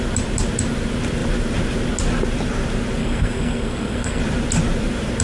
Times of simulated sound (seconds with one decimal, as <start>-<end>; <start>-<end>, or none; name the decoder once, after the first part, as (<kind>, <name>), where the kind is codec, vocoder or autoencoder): 3.0-4.2 (codec, SNAC)